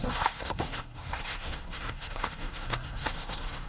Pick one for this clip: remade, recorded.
remade